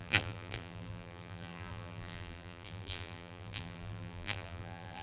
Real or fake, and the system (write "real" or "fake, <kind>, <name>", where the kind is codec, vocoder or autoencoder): fake, vocoder, BigVGAN v2